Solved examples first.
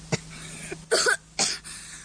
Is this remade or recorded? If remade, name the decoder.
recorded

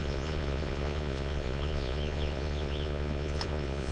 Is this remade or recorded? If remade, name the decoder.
remade, vocoder, Vocos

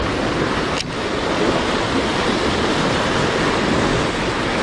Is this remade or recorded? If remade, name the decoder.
recorded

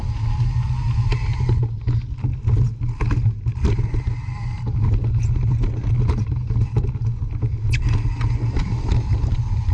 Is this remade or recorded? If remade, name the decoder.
recorded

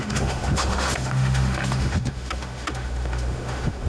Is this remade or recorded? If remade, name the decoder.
remade, autoencoder, DAC-VAE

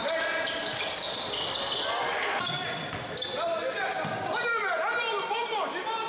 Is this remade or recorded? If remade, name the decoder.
recorded